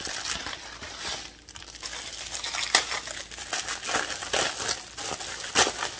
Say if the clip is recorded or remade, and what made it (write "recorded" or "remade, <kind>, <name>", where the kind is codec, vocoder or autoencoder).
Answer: recorded